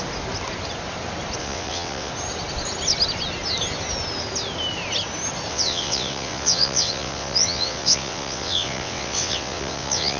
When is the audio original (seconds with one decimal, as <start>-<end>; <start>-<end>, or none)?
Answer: 0.0-1.4; 2.1-5.5